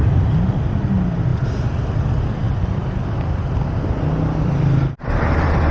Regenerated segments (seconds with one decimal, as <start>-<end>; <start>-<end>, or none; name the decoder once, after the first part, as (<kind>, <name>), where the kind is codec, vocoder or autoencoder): none